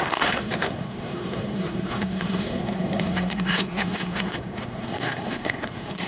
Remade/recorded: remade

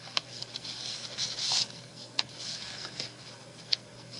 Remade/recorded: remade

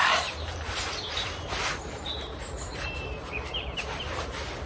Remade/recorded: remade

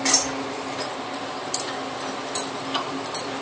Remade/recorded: recorded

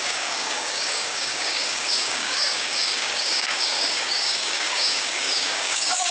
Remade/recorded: remade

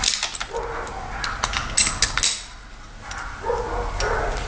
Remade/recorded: recorded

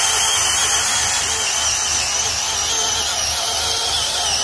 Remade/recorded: recorded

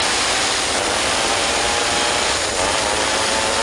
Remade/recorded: remade